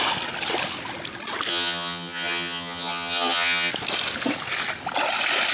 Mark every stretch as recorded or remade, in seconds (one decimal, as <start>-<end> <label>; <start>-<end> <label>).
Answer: 0.0-1.5 recorded; 1.5-3.7 remade; 3.7-5.5 recorded